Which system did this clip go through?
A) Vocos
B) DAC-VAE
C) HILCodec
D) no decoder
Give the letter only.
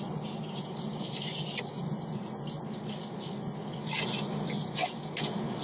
D